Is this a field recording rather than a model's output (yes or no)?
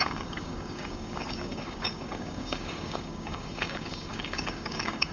no